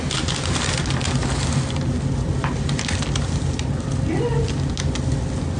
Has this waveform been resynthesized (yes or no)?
no